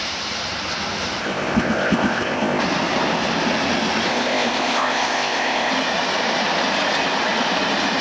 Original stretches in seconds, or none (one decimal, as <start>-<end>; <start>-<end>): 0.0-1.2; 2.6-4.1; 5.7-8.0